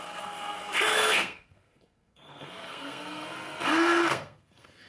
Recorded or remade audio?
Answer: remade